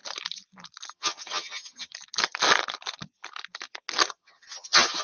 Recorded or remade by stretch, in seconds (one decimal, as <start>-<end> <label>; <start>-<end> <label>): 0.0-0.9 recorded; 0.9-1.9 remade; 1.9-4.1 recorded; 4.1-5.0 remade